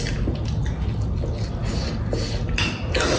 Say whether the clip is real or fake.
real